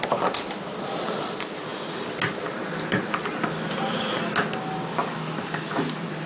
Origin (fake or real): real